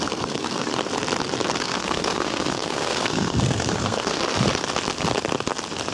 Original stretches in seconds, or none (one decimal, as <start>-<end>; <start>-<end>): 0.7-1.6; 4.2-5.9